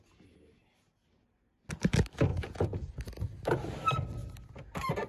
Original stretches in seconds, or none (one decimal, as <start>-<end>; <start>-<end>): 0.0-2.3; 2.9-5.1